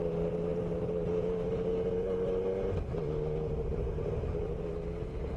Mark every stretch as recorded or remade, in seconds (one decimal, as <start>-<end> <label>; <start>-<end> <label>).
0.0-5.4 recorded